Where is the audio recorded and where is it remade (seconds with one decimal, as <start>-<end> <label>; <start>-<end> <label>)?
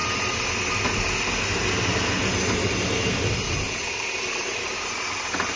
0.0-5.6 recorded